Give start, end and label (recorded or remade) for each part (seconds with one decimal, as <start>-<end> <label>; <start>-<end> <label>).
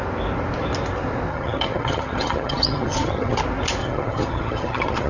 0.0-1.3 recorded; 1.3-3.4 remade; 3.4-3.8 recorded; 3.8-5.1 remade